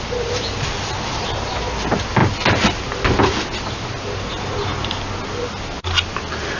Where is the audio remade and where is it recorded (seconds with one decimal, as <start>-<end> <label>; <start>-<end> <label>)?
0.0-6.6 recorded